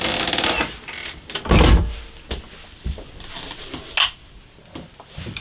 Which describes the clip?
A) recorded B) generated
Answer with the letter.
A